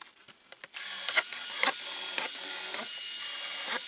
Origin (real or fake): real